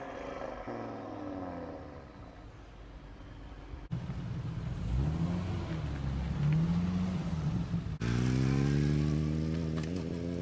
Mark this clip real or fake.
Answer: real